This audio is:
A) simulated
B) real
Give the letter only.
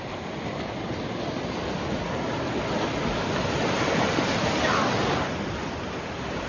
B